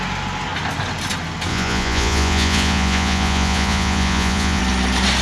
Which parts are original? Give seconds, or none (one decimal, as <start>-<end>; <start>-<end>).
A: 0.0-1.5; 4.6-5.2